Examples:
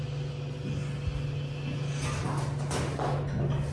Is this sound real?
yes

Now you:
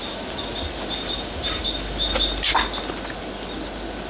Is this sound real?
yes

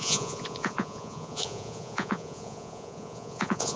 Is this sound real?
no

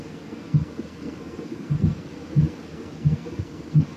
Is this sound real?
no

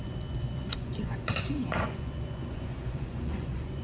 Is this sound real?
no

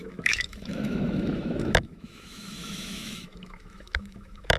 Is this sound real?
no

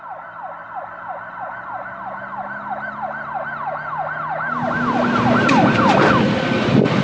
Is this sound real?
yes